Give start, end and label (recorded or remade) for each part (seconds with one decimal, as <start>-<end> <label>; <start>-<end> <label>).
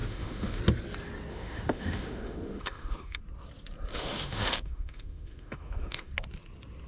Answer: 0.0-0.6 remade; 0.6-1.3 recorded; 1.3-3.2 remade; 3.2-3.9 recorded; 3.9-6.1 remade; 6.1-6.9 recorded